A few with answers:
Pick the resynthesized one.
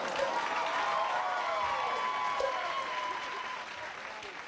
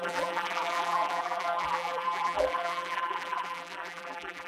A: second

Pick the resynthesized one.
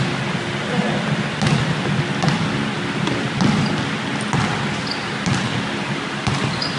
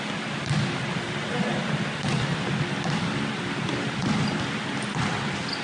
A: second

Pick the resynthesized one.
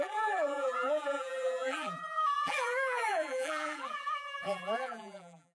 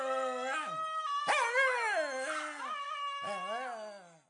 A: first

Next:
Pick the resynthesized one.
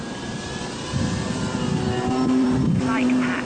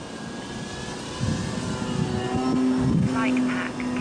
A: first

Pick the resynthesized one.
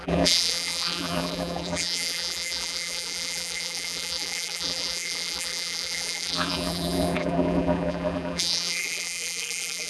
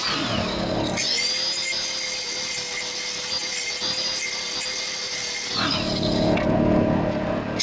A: first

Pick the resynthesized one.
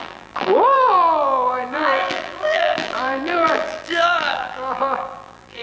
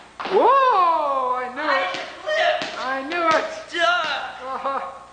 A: first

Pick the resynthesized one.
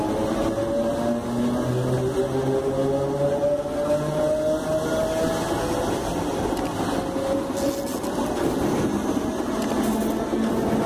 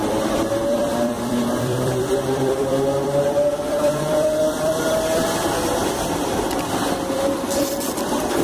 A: second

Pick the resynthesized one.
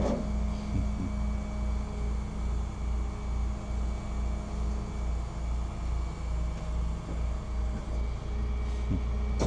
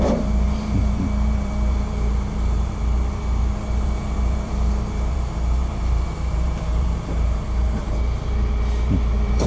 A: second